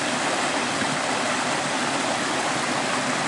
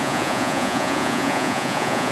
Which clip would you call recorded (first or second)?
first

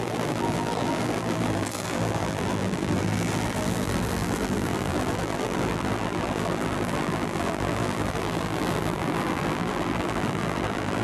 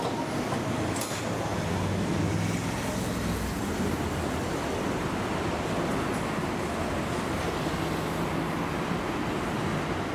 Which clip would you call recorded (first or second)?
second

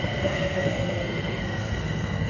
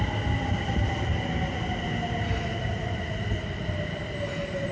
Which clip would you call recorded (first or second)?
second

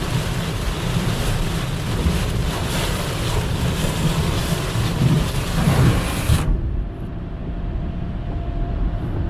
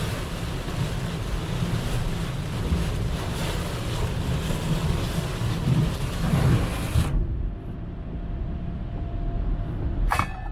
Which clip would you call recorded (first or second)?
second